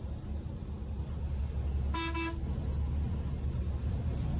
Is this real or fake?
real